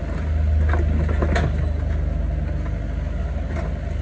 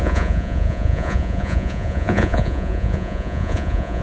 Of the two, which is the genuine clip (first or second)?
first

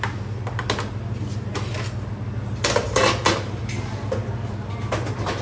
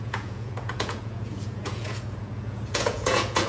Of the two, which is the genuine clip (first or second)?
first